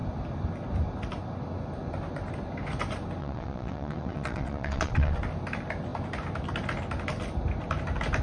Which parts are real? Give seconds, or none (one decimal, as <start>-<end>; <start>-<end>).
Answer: 0.0-3.2; 5.2-8.2